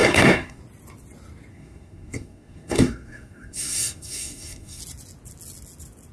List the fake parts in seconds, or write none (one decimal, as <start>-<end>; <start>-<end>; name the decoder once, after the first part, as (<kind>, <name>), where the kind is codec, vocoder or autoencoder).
0.0-0.6 (codec, SNAC); 1.5-4.8